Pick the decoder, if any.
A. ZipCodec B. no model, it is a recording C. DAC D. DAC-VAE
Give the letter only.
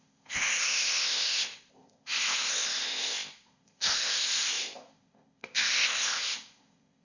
A